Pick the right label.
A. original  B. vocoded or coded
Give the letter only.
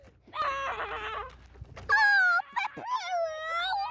A